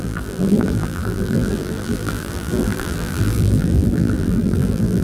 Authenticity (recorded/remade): remade